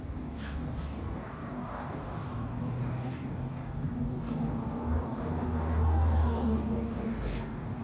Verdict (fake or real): fake